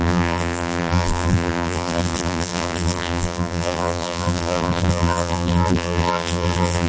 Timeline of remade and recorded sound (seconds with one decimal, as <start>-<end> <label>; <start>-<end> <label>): 0.0-6.9 remade